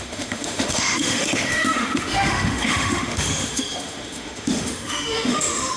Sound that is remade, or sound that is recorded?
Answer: remade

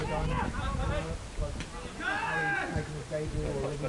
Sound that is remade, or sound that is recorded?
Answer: recorded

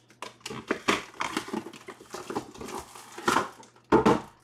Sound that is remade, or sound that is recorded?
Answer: recorded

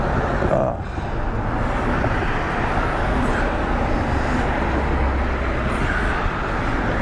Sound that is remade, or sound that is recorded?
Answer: recorded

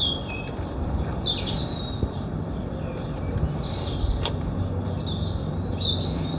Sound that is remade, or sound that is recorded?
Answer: remade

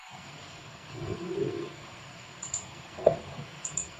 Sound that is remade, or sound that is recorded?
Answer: remade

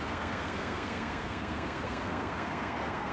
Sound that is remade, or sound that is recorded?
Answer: remade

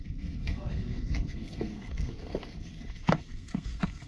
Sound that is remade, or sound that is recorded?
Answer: remade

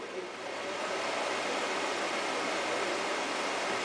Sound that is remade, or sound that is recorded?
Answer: recorded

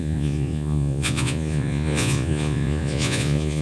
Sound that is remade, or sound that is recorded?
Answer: remade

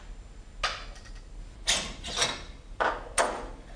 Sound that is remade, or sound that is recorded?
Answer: recorded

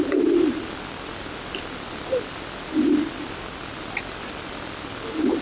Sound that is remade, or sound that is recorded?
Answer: recorded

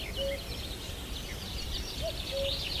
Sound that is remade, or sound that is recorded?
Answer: recorded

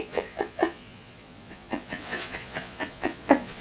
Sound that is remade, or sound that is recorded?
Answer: remade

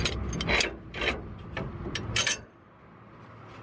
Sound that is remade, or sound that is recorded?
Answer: recorded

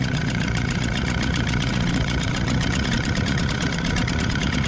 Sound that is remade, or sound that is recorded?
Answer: remade